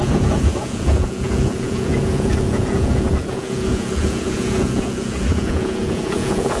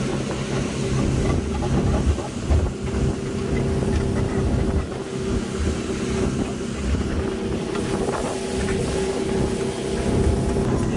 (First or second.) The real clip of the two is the second